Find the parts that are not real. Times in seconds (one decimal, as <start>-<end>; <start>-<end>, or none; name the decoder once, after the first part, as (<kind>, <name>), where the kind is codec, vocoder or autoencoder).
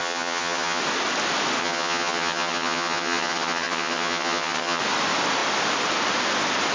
0.0-0.8 (vocoder, HiFi-GAN); 1.6-4.8